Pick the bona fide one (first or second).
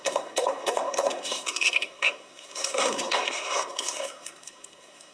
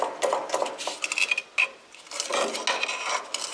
second